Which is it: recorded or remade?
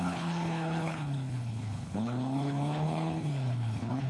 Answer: remade